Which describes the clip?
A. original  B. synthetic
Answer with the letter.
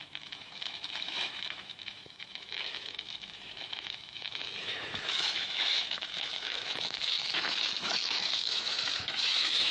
B